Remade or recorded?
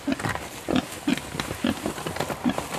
recorded